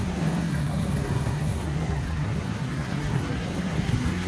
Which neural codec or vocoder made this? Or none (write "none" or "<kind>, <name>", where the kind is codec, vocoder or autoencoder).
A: codec, SNAC